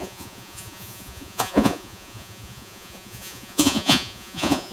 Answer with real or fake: fake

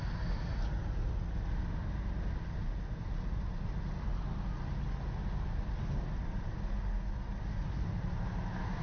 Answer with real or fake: real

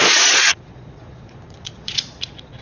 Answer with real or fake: fake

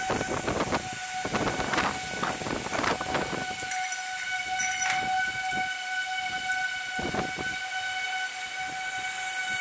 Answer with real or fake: real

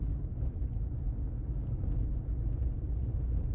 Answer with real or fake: fake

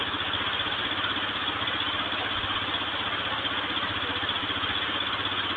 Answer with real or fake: real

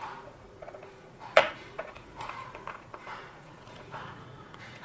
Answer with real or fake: fake